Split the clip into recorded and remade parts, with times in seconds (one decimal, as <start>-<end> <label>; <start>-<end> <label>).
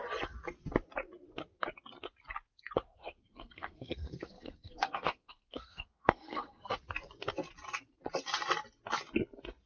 0.0-2.9 recorded; 2.9-6.7 remade; 6.7-9.7 recorded